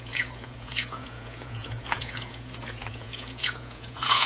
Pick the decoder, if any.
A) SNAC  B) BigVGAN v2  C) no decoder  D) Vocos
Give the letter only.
D